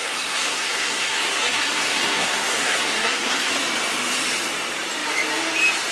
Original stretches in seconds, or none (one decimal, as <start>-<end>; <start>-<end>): 3.5-5.9